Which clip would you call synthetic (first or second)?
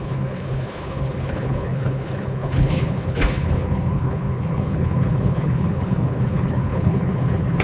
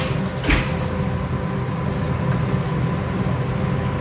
first